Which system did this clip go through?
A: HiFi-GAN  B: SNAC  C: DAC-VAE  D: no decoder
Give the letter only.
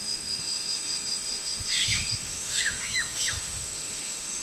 C